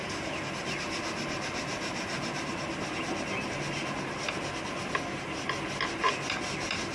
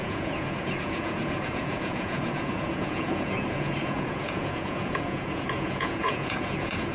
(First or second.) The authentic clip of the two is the first